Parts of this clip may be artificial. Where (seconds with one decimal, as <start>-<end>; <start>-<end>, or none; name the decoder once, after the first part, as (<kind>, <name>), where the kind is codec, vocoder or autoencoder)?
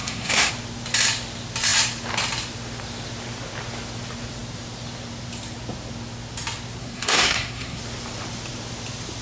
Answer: 0.0-0.5 (codec, SNAC); 6.8-7.8